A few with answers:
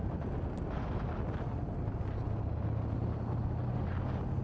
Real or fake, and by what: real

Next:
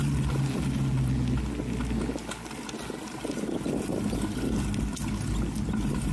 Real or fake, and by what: real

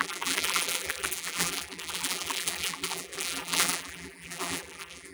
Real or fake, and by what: fake, vocoder, BigVGAN v2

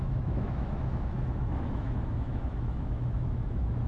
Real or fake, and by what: fake, autoencoder, DAC-VAE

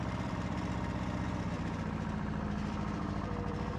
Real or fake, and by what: fake, vocoder, BigVGAN v2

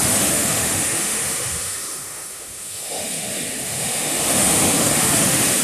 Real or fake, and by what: fake, autoencoder, DAC-VAE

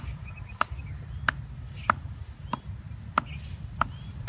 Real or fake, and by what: real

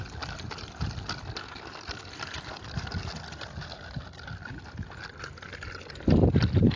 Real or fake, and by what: real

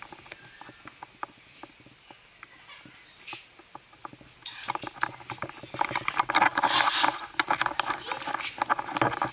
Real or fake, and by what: real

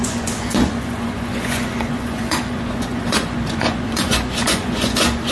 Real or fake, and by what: fake, vocoder, Vocos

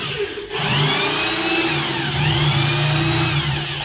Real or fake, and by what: real